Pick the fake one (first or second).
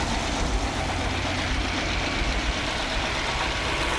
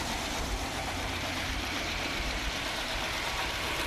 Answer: second